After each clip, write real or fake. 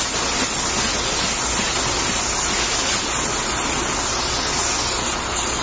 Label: real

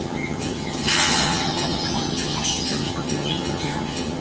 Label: fake